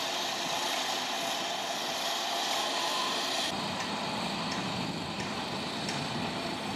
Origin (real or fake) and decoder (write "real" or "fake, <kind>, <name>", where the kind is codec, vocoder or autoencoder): fake, vocoder, BigVGAN v2